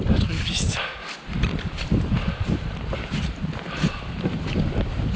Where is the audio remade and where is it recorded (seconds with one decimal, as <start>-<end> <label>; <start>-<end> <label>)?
0.0-1.0 recorded; 1.0-4.1 remade; 4.1-5.2 recorded